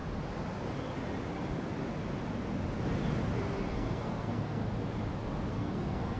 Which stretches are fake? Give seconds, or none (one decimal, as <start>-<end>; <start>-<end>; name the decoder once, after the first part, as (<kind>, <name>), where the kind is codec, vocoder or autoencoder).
3.7-4.6 (codec, SNAC); 5.5-6.2